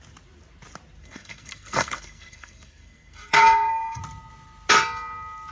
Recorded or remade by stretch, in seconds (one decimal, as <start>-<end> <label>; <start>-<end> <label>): 0.0-1.0 recorded; 1.0-4.0 remade; 4.0-5.5 recorded